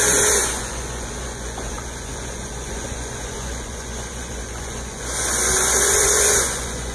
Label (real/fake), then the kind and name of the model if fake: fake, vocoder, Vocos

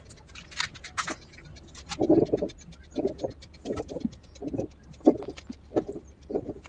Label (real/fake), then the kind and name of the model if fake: real